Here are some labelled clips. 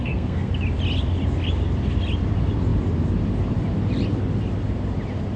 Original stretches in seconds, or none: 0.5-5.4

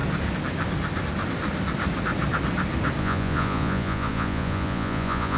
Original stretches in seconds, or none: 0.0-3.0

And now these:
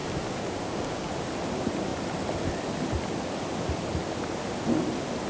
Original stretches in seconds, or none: 1.1-5.3

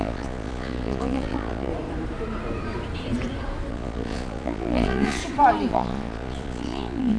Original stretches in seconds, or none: 1.7-3.7; 5.2-5.7